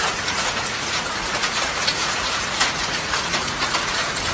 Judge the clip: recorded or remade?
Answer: remade